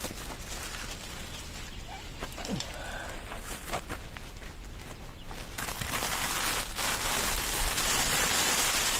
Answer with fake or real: real